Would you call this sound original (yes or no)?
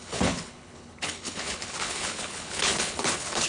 no